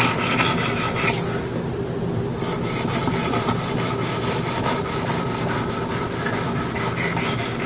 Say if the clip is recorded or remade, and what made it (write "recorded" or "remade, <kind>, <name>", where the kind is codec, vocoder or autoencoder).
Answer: recorded